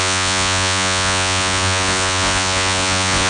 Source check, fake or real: fake